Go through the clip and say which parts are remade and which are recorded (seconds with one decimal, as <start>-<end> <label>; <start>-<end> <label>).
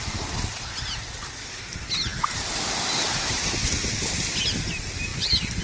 0.0-5.6 recorded